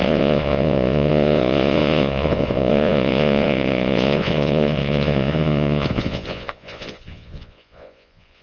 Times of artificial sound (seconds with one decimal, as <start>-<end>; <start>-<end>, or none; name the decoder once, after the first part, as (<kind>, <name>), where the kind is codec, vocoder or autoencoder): 0.0-8.4 (vocoder, Vocos)